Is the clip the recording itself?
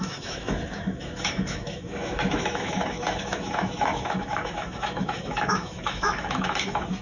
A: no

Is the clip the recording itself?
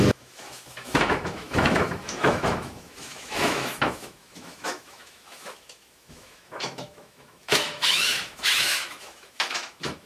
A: no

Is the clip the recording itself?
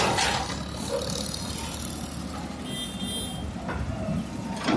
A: yes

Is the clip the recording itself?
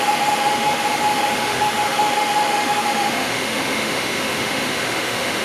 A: no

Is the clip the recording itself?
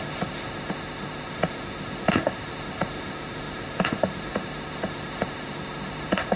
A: no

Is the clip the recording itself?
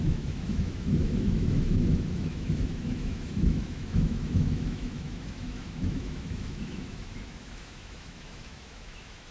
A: no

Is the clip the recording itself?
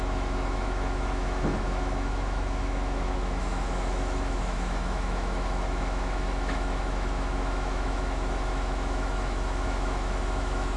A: no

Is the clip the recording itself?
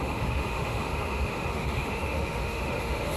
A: no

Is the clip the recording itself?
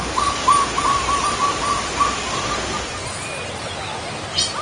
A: yes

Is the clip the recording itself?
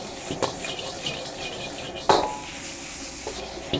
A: yes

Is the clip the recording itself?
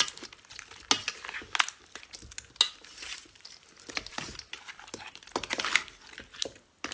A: yes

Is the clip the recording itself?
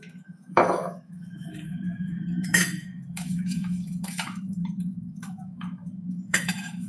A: no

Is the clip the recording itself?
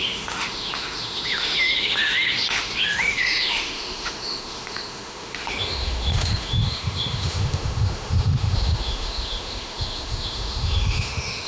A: no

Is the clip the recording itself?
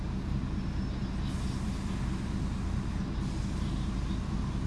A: yes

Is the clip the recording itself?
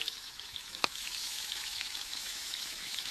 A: no